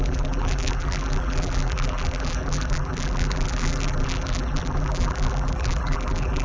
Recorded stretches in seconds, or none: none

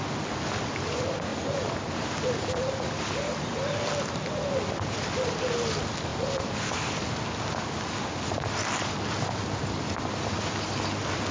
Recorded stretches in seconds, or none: 0.0-1.3; 3.8-6.1; 7.1-11.3

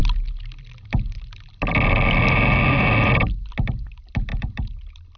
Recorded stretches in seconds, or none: 0.0-4.3

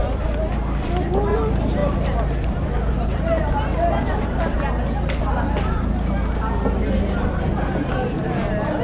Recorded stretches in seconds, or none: 1.3-1.8; 2.7-8.8

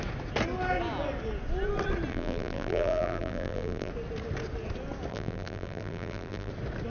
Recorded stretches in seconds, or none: 0.0-2.1; 3.9-5.1; 6.5-6.9

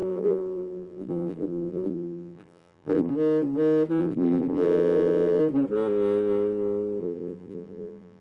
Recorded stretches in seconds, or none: 3.1-4.0; 5.4-7.0

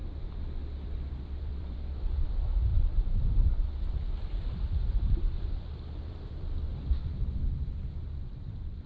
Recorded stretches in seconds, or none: none